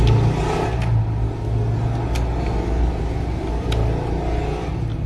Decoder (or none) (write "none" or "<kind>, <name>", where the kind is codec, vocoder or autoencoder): none